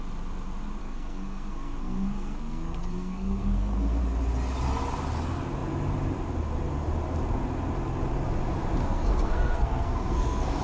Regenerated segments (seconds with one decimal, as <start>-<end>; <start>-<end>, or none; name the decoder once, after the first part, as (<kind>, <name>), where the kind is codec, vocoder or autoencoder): 0.8-4.0 (codec, SNAC); 8.8-10.6